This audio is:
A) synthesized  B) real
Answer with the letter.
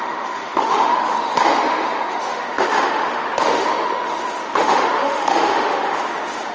A